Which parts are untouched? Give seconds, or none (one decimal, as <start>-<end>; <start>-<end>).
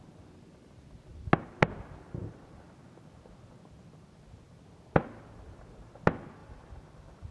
0.0-6.4